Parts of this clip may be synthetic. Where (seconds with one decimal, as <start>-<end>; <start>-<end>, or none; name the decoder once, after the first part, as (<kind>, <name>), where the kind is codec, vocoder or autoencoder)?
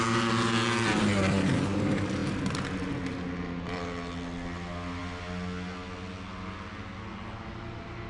none